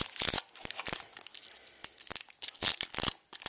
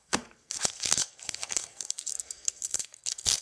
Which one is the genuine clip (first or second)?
first